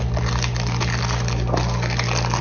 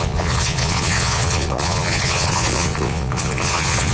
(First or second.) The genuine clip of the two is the first